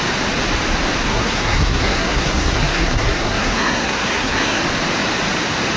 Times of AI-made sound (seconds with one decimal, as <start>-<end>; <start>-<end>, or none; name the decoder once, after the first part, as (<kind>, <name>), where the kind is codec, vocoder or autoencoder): 1.1-4.6 (codec, SNAC)